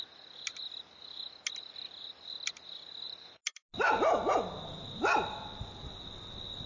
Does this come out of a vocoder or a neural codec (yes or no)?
no